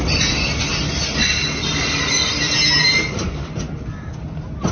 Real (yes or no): yes